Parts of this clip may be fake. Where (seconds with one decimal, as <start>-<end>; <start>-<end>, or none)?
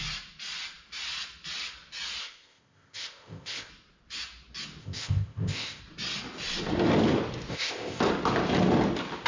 2.2-3.7; 4.8-5.8; 7.5-8.0